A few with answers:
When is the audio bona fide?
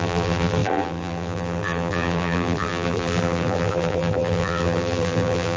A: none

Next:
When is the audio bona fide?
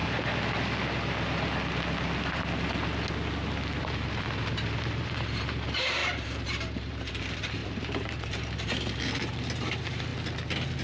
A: 0.0-3.8; 10.1-10.8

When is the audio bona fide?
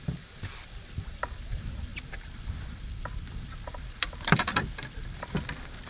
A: 0.0-1.9; 5.4-5.9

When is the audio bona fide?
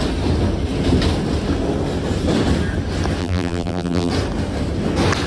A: 0.0-3.2; 4.1-5.3